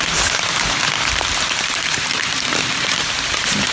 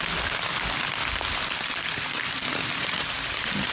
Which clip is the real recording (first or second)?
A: second